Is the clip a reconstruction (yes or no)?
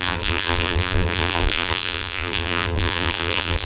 yes